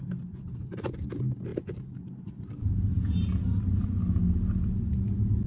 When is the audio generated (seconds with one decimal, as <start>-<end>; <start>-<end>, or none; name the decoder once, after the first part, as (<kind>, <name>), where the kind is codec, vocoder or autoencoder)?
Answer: none